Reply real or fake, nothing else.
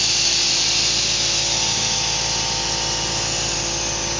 real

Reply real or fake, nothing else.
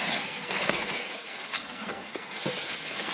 fake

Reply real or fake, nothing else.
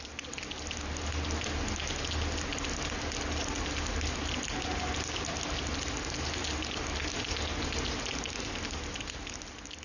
real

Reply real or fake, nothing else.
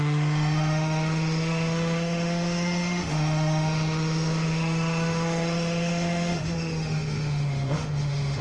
fake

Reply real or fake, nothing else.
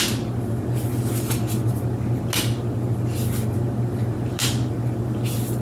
real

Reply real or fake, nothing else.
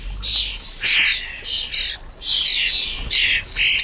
real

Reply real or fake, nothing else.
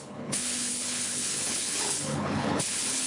fake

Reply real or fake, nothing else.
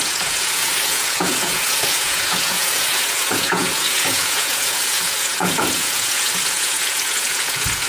fake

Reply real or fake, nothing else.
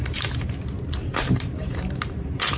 fake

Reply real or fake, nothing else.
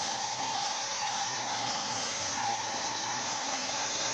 fake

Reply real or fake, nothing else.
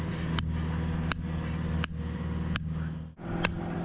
real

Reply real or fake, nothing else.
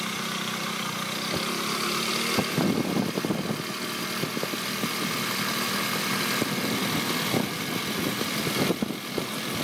fake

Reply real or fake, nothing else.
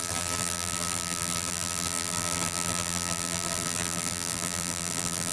fake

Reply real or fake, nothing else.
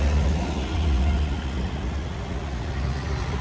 fake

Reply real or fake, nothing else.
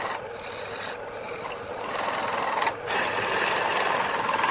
real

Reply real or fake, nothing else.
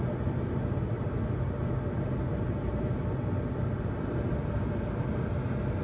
real